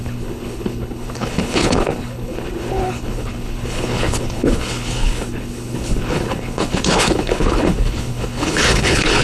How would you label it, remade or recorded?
remade